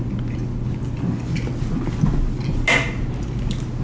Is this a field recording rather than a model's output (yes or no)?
yes